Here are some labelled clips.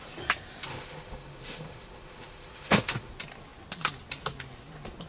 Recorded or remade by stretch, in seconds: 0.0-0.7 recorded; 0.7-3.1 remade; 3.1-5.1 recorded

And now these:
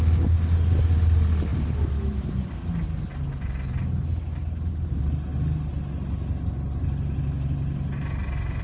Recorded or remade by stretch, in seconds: 0.0-8.6 recorded

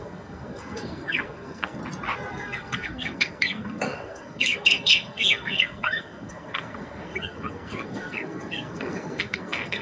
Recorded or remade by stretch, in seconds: 0.0-1.8 remade; 1.8-2.3 recorded; 2.3-9.8 remade

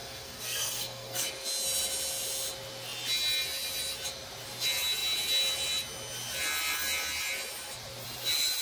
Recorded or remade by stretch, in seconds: 0.0-1.3 remade; 1.3-8.6 recorded

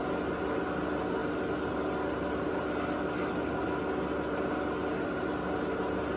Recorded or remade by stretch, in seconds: 0.0-6.2 recorded

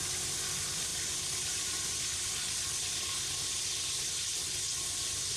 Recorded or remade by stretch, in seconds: 0.0-5.4 recorded

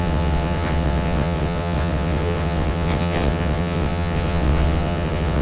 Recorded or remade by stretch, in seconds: 0.0-5.4 remade

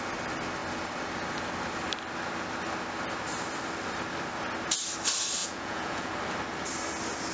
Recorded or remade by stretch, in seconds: 0.0-5.4 recorded; 5.4-6.1 remade; 6.1-7.3 recorded